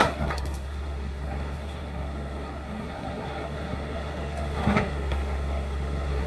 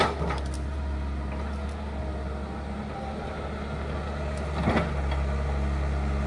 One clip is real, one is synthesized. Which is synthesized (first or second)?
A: first